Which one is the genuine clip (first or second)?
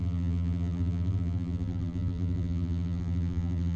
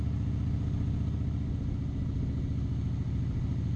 second